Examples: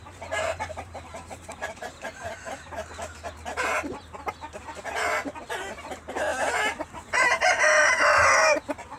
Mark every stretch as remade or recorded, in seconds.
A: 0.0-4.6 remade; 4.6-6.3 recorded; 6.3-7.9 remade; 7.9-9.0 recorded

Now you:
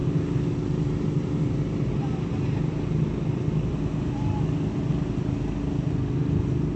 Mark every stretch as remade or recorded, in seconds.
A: 0.0-6.8 recorded

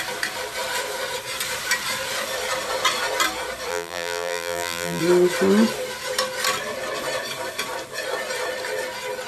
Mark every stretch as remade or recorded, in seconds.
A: 0.0-3.7 recorded; 3.7-5.0 remade; 5.0-9.3 recorded

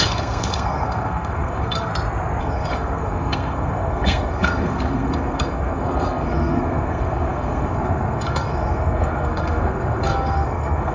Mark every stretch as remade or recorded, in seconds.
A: 0.0-1.9 remade; 1.9-2.4 recorded; 2.4-10.9 remade

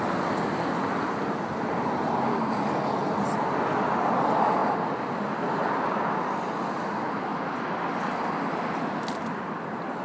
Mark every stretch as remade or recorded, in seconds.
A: 0.0-10.0 recorded